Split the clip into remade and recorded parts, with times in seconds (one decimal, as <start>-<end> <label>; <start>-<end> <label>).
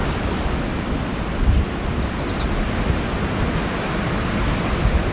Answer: 0.0-5.1 recorded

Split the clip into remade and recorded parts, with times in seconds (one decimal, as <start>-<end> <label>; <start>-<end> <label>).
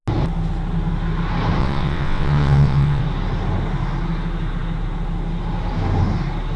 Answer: 0.0-1.6 recorded; 1.6-3.0 remade; 3.0-6.6 recorded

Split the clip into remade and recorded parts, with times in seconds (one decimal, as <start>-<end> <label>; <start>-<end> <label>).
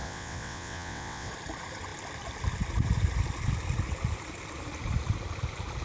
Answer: 0.0-1.3 remade; 1.3-5.8 recorded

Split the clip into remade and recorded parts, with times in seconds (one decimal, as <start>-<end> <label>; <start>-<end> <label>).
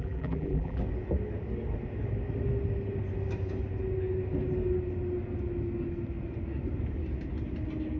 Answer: 0.0-0.8 remade; 0.8-8.0 recorded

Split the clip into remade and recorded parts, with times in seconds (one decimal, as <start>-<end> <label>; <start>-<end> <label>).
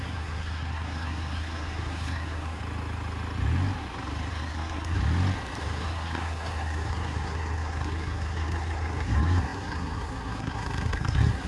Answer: 0.0-2.6 remade; 2.6-4.3 recorded; 4.3-5.0 remade; 5.0-5.6 recorded; 5.6-11.5 remade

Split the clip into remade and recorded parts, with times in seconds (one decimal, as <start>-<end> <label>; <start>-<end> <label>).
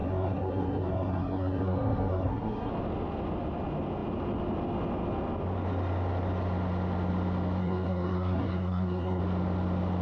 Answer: 0.0-2.7 remade; 2.7-7.6 recorded; 7.6-9.2 remade; 9.2-10.0 recorded